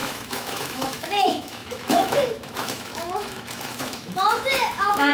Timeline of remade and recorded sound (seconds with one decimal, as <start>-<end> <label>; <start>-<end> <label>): 0.0-5.1 remade